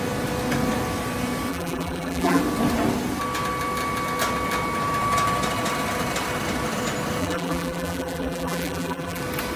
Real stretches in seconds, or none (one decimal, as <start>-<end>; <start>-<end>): 0.0-1.5; 2.4-7.2; 9.2-9.6